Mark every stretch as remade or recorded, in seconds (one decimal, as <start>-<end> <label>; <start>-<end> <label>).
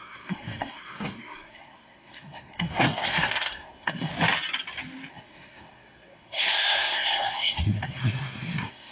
0.0-4.1 remade; 4.1-5.1 recorded; 5.1-8.9 remade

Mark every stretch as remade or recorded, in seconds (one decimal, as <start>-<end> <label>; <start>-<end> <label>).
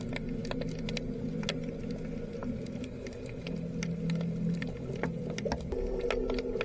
0.0-6.6 recorded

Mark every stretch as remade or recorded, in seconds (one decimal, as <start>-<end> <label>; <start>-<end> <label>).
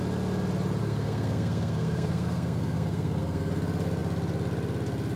0.0-0.8 recorded; 0.8-3.5 remade; 3.5-5.2 recorded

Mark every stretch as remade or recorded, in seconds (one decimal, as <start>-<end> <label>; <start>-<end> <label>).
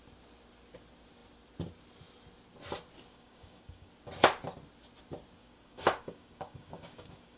0.0-3.1 recorded; 3.1-3.9 remade; 3.9-5.4 recorded; 5.4-7.4 remade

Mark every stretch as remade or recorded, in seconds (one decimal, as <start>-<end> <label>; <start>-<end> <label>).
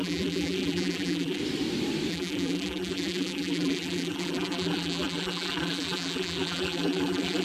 0.0-1.4 remade; 1.4-2.1 recorded; 2.1-7.4 remade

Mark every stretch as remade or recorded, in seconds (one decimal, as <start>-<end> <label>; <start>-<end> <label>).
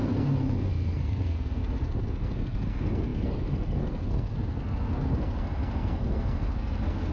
0.0-7.1 remade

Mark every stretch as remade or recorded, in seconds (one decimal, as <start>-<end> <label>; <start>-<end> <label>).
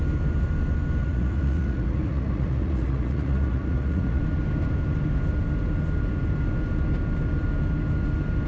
0.0-1.0 recorded; 1.0-4.2 remade; 4.2-8.5 recorded